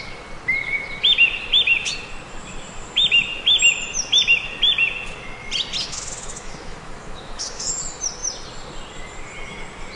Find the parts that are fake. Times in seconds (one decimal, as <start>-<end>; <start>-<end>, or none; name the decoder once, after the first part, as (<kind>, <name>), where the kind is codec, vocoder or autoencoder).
5.8-7.7 (autoencoder, DAC-VAE)